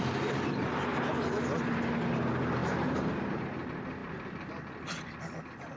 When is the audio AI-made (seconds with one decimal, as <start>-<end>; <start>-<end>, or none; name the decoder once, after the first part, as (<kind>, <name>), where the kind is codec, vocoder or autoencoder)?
0.0-0.9 (vocoder, BigVGAN v2); 1.6-4.0